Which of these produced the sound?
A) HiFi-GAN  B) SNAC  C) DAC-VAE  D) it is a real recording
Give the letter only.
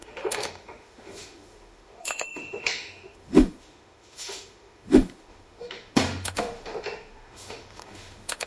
C